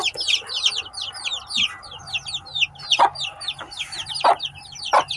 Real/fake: real